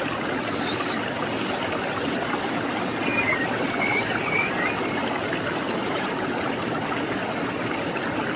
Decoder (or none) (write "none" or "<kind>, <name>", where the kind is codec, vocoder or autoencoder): none